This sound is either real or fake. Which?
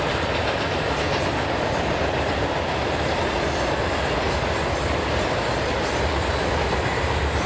real